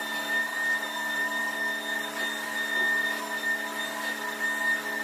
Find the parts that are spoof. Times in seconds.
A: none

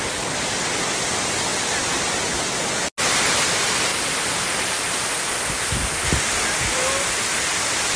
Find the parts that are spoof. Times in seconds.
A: none